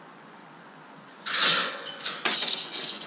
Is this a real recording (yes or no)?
no